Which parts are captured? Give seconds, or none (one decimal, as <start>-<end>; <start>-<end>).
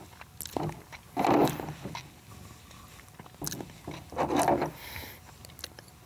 0.0-1.4; 5.1-6.1